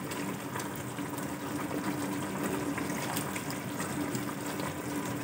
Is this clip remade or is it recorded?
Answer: recorded